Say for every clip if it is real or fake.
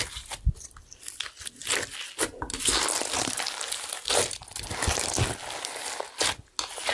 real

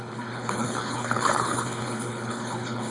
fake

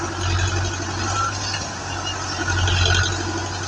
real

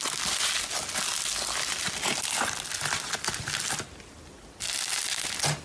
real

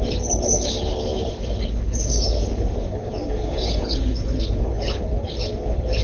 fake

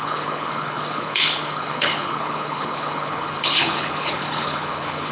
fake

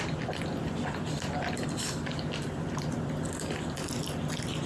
real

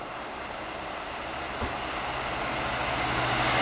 real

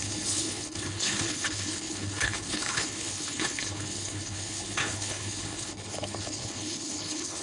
fake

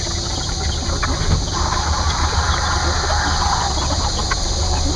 real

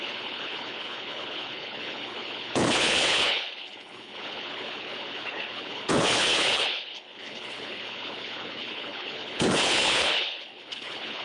fake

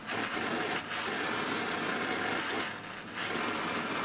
real